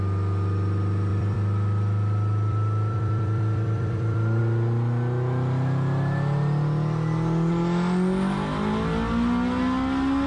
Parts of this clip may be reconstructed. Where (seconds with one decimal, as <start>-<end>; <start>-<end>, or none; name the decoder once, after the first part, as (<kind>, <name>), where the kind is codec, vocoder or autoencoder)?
1.1-4.4 (vocoder, BigVGAN v2)